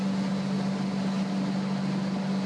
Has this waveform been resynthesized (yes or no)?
no